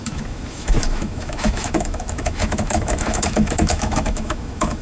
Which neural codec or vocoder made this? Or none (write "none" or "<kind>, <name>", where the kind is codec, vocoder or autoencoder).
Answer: autoencoder, DAC-VAE